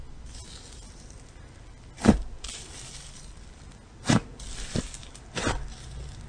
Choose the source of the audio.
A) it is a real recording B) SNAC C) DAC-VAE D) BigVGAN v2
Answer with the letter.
A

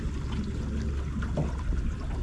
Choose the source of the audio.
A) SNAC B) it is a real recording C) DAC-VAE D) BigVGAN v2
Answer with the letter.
B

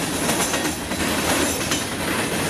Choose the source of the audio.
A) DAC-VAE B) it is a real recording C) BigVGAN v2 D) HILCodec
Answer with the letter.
B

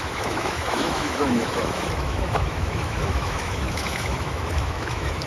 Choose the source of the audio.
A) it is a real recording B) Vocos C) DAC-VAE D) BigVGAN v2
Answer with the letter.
C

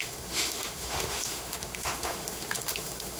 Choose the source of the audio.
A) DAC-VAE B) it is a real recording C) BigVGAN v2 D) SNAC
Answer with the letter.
A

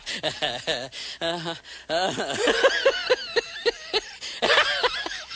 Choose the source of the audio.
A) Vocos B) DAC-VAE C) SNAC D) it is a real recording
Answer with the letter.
D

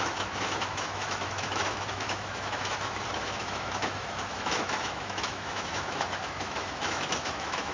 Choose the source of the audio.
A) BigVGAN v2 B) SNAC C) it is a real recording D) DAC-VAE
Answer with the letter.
D